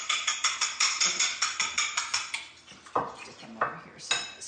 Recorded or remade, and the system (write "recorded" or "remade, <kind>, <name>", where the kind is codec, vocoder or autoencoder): recorded